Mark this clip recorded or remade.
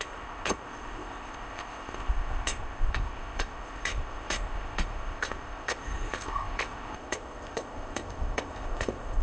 remade